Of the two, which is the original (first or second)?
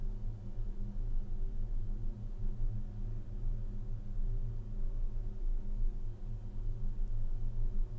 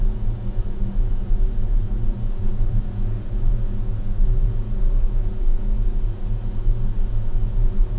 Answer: first